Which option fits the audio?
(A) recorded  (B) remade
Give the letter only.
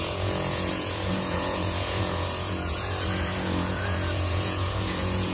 B